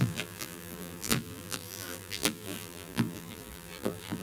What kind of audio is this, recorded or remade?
remade